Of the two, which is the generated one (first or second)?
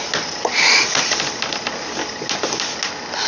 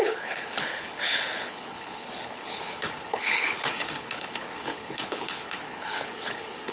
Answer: second